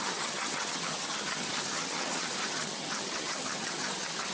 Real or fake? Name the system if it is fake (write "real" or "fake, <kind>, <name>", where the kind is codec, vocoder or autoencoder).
fake, vocoder, HiFi-GAN